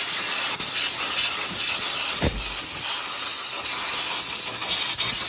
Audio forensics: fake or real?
real